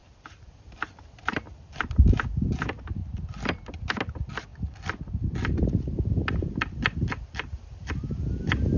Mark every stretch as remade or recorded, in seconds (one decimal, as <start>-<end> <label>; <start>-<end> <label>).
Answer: 0.0-1.9 remade; 1.9-4.5 recorded; 4.5-5.8 remade; 5.8-8.8 recorded